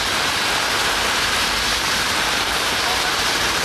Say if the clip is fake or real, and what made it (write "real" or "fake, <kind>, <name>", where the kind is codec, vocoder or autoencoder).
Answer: fake, vocoder, BigVGAN v2